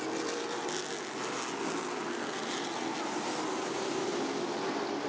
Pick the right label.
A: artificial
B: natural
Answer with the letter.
B